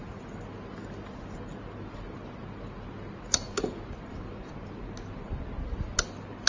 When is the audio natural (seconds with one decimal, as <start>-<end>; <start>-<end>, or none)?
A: 0.0-6.5